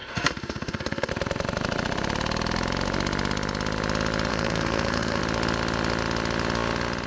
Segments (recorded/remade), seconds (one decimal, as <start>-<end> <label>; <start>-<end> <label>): 0.0-1.1 remade; 1.1-4.3 recorded; 4.3-5.2 remade; 5.2-7.1 recorded